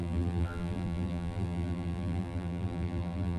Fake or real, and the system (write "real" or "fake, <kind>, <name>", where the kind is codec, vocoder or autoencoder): fake, vocoder, BigVGAN v2